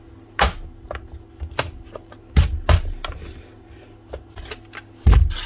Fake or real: real